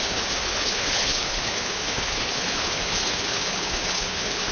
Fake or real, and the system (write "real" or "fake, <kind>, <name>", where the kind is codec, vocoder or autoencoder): fake, codec, HILCodec